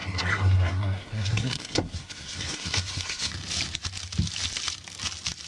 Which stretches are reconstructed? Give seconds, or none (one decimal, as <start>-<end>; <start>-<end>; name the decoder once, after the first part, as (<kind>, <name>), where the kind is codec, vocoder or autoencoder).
0.0-3.3 (codec, SNAC)